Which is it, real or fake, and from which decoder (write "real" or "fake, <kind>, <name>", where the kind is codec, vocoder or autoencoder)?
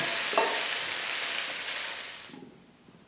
real